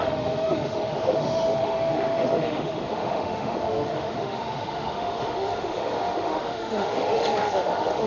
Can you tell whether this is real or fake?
fake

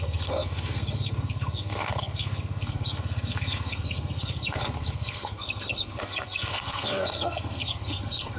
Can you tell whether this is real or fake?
fake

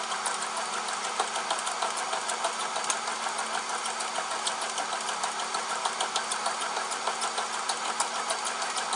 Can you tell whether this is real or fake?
real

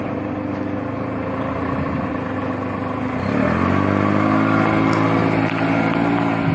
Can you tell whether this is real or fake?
real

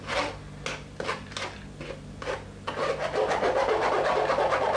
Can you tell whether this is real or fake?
real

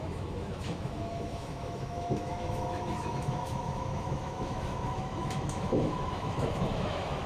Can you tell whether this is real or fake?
fake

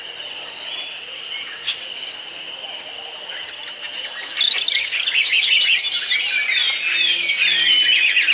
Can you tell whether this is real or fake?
real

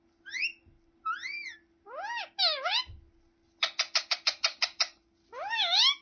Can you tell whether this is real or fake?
real